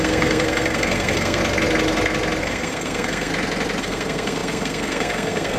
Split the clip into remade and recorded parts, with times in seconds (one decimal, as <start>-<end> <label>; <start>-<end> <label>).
0.0-1.4 remade; 1.4-2.4 recorded; 2.4-3.3 remade; 3.3-3.8 recorded; 3.8-5.6 remade